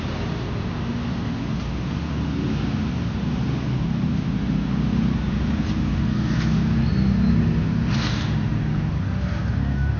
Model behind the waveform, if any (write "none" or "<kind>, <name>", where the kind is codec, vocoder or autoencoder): none